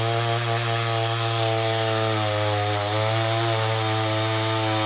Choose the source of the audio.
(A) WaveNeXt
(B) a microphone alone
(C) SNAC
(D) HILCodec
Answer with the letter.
B